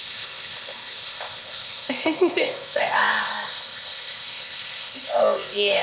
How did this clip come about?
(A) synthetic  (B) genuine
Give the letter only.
A